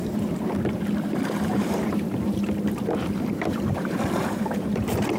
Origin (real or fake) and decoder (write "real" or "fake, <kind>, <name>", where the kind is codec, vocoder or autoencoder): fake, vocoder, BigVGAN v2